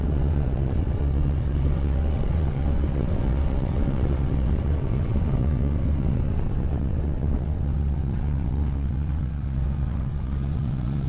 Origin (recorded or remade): remade